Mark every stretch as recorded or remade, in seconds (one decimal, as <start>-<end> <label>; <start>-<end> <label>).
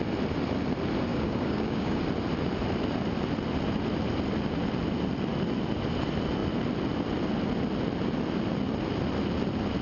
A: 0.0-1.1 recorded; 1.1-2.0 remade; 2.0-9.8 recorded